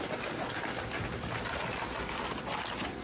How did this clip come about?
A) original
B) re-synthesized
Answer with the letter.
A